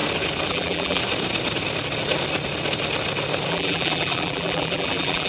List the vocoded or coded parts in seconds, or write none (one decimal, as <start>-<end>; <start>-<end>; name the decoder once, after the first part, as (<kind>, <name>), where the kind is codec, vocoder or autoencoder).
0.5-1.0 (vocoder, BigVGAN v2); 3.5-5.3